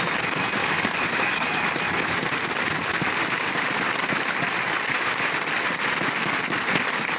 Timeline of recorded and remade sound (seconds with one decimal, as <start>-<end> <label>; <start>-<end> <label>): 0.0-0.6 recorded; 0.6-1.5 remade; 1.5-7.2 recorded